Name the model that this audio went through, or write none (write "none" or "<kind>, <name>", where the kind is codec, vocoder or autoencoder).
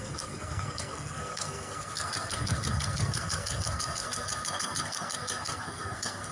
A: codec, SNAC